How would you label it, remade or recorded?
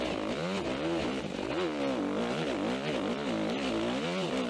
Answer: recorded